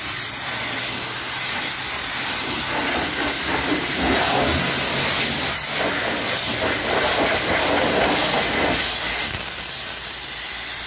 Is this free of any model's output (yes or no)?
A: yes